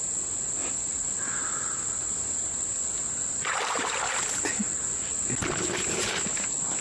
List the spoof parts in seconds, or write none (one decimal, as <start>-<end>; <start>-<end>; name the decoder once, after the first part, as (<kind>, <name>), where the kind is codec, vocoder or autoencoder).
0.6-4.1 (vocoder, BigVGAN v2)